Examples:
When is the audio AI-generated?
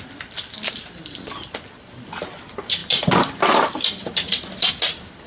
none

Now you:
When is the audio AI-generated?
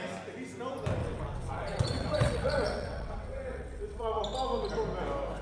1.0-4.2 (vocoder, WaveNeXt)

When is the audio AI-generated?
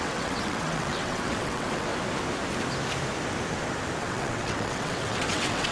0.0-1.9 (vocoder, WaveNeXt); 4.0-5.7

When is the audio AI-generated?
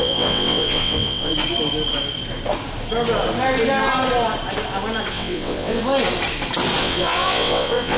0.0-1.3 (vocoder, WaveNeXt); 5.1-5.8; 6.8-8.0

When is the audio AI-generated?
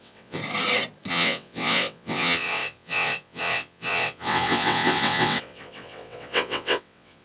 0.0-0.4 (vocoder, WaveNeXt); 1.1-7.2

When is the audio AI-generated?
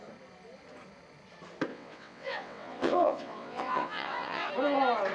1.7-4.5 (vocoder, WaveNeXt)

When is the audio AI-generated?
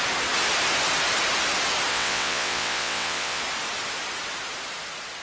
1.9-3.4 (vocoder, WaveNeXt)